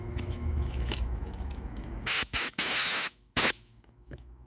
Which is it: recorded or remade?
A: remade